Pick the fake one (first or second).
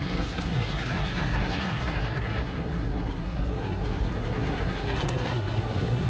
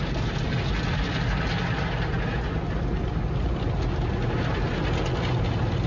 first